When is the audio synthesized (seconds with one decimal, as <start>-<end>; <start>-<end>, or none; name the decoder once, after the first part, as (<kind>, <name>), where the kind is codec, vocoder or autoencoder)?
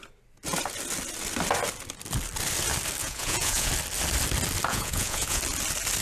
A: 3.0-3.7 (vocoder, Vocos); 4.7-5.4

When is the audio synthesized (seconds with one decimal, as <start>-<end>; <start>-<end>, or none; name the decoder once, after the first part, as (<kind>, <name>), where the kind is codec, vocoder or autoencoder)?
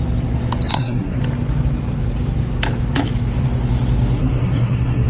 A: 0.7-1.2 (codec, SNAC); 4.2-5.1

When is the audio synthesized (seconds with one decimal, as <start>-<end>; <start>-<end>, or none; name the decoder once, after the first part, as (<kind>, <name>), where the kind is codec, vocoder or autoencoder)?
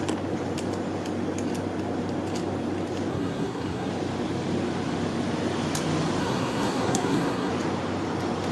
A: 3.1-3.9 (codec, SNAC); 6.2-7.5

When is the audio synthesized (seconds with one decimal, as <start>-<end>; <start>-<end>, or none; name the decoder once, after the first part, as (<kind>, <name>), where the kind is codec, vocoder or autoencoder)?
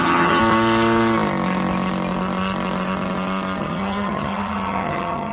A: 0.0-0.4 (vocoder, HiFi-GAN); 3.6-5.3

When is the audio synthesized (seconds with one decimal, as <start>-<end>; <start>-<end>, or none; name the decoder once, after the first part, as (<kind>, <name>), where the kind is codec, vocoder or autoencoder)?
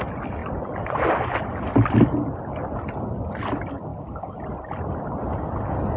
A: none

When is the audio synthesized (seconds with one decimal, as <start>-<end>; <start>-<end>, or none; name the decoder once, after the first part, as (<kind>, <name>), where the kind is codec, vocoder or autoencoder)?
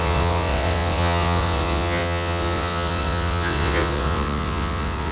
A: 0.0-5.1 (vocoder, WaveNeXt)